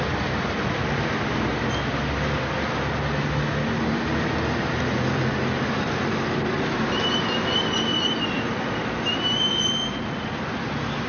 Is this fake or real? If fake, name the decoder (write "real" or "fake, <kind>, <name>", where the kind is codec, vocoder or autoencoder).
real